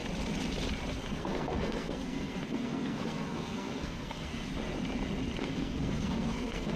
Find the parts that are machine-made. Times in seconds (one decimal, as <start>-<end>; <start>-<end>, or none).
1.1-4.3; 5.4-6.8